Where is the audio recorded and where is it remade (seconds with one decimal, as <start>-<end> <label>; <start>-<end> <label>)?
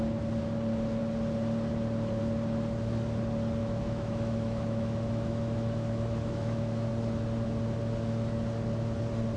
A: 0.0-3.6 recorded; 3.6-6.9 remade; 6.9-9.4 recorded